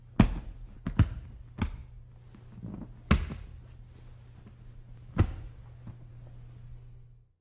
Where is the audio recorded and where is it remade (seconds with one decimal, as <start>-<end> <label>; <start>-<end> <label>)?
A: 0.0-7.4 recorded